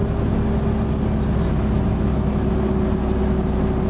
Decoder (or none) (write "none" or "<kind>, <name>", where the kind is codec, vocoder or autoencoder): none